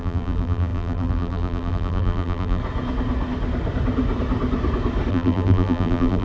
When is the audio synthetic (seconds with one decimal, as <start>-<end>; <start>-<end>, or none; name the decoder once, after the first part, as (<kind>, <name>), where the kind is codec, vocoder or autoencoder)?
0.0-2.6 (vocoder, BigVGAN v2); 5.1-6.2